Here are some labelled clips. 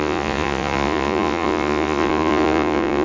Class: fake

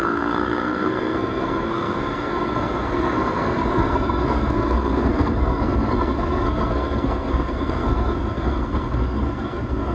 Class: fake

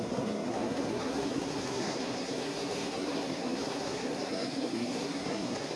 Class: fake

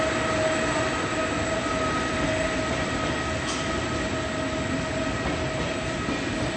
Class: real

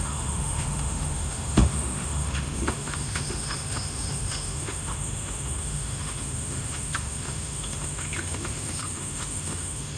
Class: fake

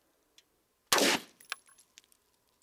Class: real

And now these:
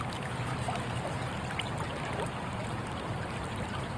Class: real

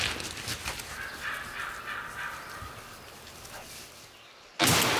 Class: real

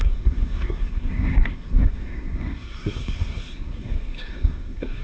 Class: fake